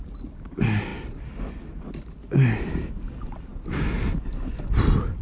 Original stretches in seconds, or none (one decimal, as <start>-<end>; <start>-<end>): 0.0-5.2